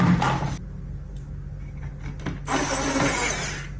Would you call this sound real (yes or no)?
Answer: yes